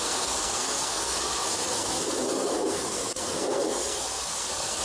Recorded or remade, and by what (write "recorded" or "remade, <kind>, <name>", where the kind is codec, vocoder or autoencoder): remade, codec, SNAC